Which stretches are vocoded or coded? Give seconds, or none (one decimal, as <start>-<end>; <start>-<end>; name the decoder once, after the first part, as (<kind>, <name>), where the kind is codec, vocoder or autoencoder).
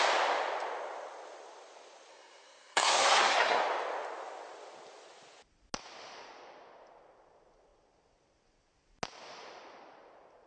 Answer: 2.1-3.6 (codec, SNAC)